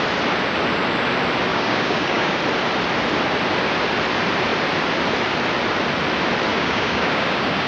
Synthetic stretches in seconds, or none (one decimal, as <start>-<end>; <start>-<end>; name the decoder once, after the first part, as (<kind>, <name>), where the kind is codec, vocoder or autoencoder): 1.5-2.4 (codec, DAC); 6.5-7.7